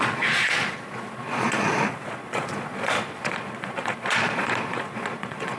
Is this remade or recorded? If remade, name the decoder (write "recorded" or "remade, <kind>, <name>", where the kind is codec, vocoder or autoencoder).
remade, vocoder, Vocos